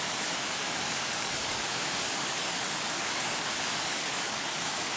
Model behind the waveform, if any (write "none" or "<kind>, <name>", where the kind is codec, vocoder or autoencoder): codec, DAC